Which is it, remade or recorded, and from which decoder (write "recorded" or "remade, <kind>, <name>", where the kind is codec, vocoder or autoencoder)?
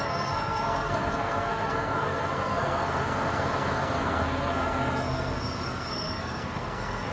remade, codec, SNAC